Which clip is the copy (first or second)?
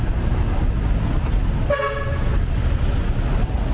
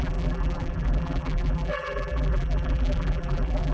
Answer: second